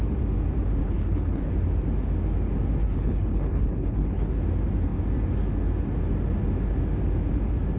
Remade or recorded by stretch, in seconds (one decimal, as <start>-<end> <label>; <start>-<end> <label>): 0.0-0.8 recorded; 0.8-1.5 remade; 1.5-2.8 recorded; 2.8-4.3 remade; 4.3-7.8 recorded